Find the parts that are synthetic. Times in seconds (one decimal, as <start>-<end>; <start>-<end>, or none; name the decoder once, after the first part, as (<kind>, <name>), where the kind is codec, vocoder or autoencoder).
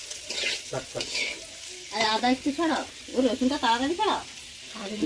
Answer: 0.0-1.3 (vocoder, WaveNeXt); 2.1-3.1; 4.6-5.1